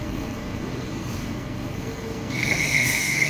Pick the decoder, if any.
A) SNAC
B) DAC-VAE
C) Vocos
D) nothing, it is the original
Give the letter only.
A